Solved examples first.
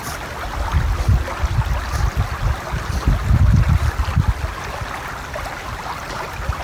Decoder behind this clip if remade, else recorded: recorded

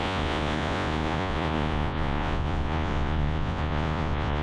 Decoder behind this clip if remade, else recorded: remade, vocoder, Vocos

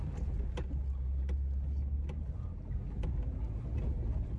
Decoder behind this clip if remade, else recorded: recorded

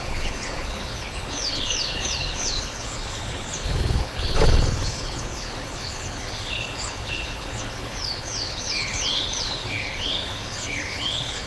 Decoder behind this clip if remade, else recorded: remade, codec, HILCodec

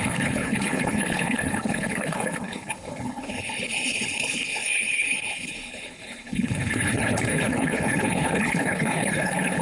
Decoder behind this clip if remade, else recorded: remade, codec, HILCodec